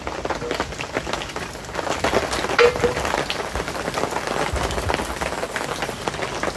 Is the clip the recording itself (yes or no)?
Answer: yes